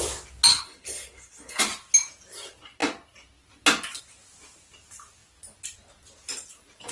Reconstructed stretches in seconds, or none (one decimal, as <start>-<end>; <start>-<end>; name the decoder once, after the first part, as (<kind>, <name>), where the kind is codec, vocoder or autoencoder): 0.5-1.6 (codec, HILCodec)